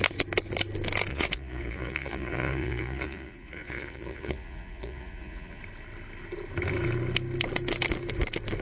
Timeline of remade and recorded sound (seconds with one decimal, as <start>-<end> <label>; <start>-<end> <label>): 0.0-1.1 recorded; 1.1-5.6 remade; 5.6-8.6 recorded

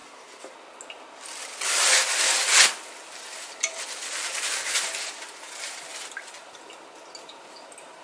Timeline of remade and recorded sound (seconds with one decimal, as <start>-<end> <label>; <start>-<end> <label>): 0.0-8.0 recorded

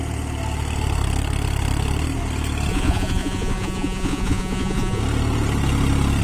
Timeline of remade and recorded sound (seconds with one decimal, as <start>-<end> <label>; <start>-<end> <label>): 0.0-2.7 recorded; 2.7-5.0 remade; 5.0-6.2 recorded

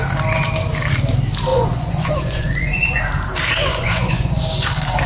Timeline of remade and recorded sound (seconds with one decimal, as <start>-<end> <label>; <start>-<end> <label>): 0.0-1.5 recorded; 1.5-3.0 remade; 3.0-3.7 recorded; 3.7-4.4 remade; 4.4-5.1 recorded